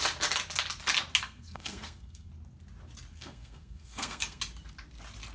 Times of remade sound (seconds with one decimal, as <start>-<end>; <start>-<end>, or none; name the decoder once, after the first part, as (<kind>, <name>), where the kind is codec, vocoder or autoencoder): 1.2-2.3 (codec, SNAC); 3.1-4.4